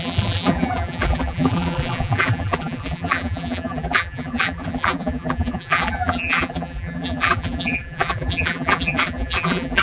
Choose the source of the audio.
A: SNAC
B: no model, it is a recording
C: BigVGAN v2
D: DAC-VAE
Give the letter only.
C